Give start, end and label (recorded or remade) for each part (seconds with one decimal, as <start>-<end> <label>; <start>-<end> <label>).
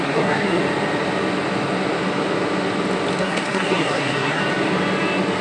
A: 0.0-0.6 remade; 0.6-3.2 recorded; 3.2-4.4 remade; 4.4-5.4 recorded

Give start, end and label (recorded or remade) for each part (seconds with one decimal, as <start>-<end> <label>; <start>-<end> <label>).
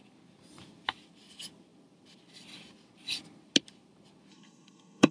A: 0.0-4.3 recorded; 4.3-5.1 remade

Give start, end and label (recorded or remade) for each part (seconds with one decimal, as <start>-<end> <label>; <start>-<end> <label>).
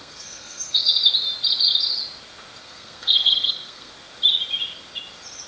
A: 0.0-1.0 remade; 1.0-2.6 recorded; 2.6-3.9 remade; 3.9-5.5 recorded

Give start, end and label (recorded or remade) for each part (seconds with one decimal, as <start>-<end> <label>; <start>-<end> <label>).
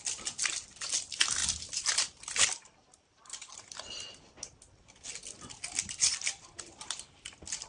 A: 0.0-7.7 recorded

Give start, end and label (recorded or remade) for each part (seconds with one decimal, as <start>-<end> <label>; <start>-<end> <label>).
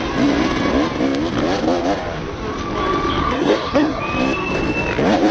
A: 0.0-3.2 recorded; 3.2-4.0 remade; 4.0-5.3 recorded